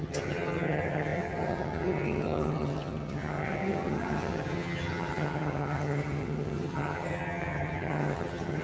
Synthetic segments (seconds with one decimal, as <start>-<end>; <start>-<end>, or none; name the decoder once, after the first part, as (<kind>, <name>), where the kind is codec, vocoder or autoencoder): 0.0-8.6 (vocoder, HiFi-GAN)